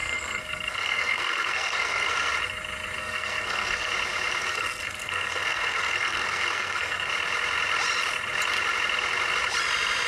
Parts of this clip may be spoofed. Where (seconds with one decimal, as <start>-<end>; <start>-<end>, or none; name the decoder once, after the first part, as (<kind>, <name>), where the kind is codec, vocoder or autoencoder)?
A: 0.0-2.3 (codec, SNAC); 3.0-3.9; 4.4-7.1